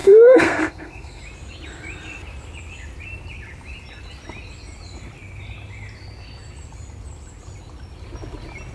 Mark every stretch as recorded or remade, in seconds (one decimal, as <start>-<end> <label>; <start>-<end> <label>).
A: 0.0-1.2 remade; 1.2-8.7 recorded